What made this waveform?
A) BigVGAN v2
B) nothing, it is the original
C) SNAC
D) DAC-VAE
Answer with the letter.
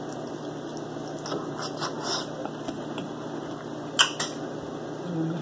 B